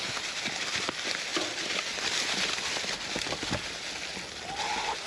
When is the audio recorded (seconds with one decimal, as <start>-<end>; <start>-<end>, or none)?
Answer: 0.0-5.1